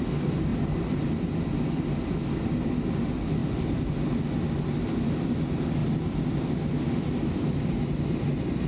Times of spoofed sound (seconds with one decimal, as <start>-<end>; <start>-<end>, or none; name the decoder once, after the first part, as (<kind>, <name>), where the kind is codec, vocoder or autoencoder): 0.5-1.1 (vocoder, BigVGAN v2); 5.8-7.4